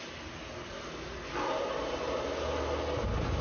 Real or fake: real